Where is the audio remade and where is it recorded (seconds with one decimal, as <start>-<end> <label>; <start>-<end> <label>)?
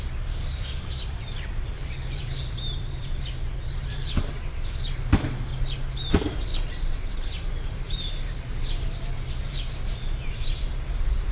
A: 0.0-5.5 remade; 5.5-6.1 recorded; 6.1-11.3 remade